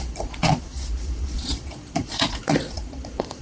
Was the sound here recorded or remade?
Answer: remade